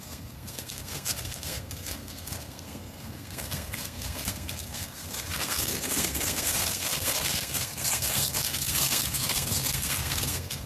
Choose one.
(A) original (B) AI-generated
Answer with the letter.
B